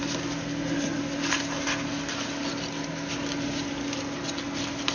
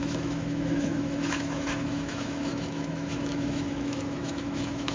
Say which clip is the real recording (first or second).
first